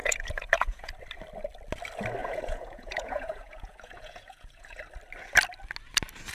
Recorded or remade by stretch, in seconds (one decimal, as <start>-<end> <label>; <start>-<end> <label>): 0.0-0.9 remade; 0.9-2.2 recorded; 2.2-4.8 remade; 4.8-6.3 recorded